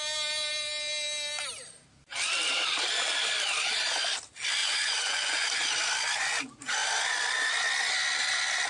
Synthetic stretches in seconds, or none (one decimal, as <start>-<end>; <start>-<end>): 4.6-5.6